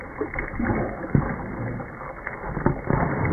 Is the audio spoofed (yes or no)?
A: no